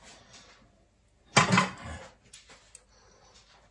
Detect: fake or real real